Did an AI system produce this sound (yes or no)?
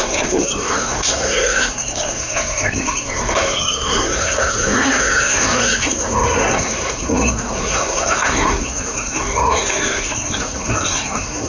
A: yes